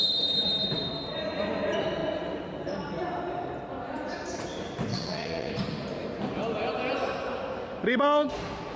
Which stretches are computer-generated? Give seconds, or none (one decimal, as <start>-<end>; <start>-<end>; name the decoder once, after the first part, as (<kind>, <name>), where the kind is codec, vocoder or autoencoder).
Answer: 4.9-5.5 (vocoder, Vocos)